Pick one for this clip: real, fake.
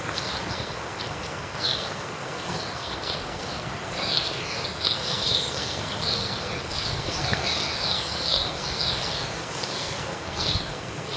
fake